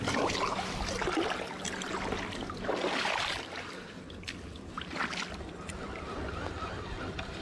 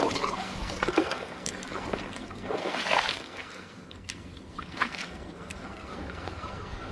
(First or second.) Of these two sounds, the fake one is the second